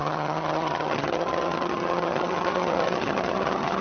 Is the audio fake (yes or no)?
yes